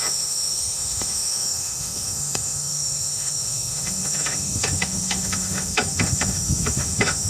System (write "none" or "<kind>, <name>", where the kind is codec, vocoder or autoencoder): autoencoder, DAC-VAE